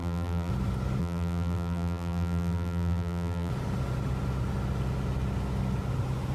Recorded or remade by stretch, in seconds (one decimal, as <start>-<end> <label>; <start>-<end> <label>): 0.0-0.5 remade; 0.5-1.0 recorded; 1.0-3.5 remade; 3.5-6.3 recorded